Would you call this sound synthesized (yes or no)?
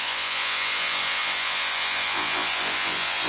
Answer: yes